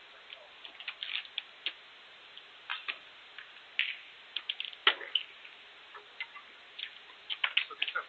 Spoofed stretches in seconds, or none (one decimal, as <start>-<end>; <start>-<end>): none